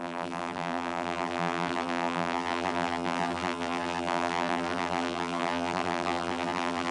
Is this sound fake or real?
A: fake